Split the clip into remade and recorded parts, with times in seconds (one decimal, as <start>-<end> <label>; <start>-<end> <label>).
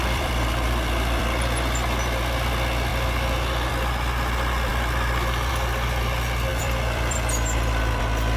0.0-1.2 remade; 1.2-4.7 recorded; 4.7-5.5 remade; 5.5-6.5 recorded; 6.5-8.0 remade; 8.0-8.4 recorded